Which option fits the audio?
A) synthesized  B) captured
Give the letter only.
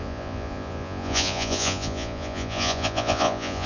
A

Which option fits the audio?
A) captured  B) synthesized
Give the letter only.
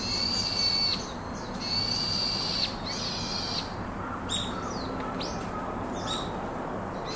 A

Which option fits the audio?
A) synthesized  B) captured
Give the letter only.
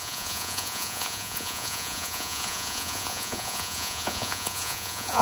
A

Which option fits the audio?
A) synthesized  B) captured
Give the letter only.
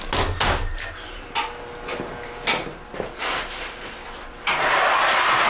B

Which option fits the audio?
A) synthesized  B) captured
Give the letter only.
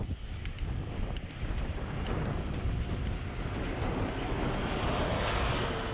B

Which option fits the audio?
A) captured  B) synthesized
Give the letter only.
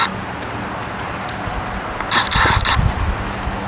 A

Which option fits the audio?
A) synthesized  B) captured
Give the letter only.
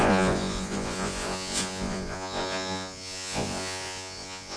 A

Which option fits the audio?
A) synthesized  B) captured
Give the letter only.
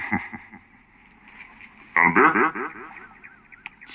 B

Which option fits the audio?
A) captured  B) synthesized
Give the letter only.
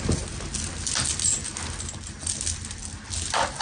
A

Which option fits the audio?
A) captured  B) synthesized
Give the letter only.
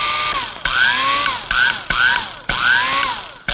A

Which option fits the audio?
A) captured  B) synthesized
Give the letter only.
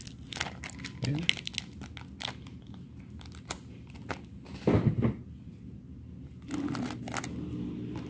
A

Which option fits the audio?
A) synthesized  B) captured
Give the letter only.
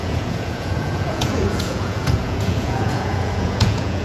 A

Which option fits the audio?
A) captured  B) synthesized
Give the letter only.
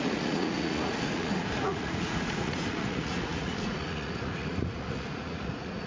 B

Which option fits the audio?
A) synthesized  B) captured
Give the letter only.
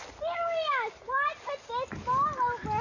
B